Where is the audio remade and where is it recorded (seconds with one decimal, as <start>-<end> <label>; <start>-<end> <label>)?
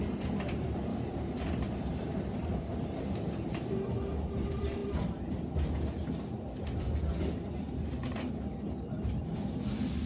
0.0-10.1 recorded